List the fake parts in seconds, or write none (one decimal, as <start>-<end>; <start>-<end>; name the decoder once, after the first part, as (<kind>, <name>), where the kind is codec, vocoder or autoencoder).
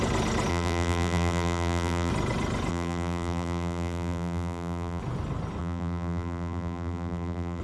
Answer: 0.5-2.1 (vocoder, BigVGAN v2); 2.7-5.0; 5.6-7.6